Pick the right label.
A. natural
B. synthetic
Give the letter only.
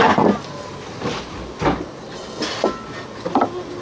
A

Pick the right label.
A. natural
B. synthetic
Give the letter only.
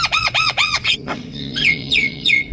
B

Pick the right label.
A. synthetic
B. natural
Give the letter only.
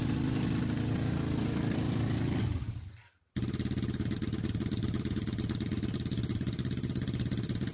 B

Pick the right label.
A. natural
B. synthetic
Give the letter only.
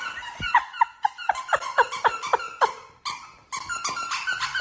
A